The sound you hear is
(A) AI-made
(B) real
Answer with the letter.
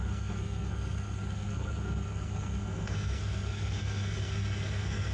A